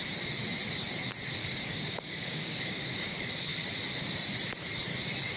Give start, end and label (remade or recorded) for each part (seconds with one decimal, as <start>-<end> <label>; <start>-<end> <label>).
0.0-1.4 recorded; 1.4-3.3 remade; 3.3-5.4 recorded